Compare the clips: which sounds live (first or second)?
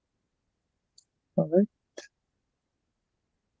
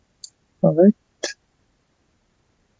second